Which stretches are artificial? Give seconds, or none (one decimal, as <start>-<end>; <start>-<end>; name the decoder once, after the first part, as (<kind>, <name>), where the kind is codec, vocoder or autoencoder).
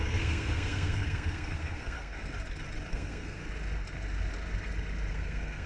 0.0-2.1 (codec, SNAC); 2.9-3.4; 5.1-5.7